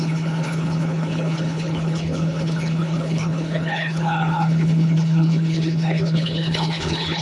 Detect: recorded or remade remade